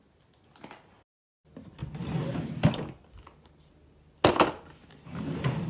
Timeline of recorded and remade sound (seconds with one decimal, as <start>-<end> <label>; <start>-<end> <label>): 0.0-5.7 recorded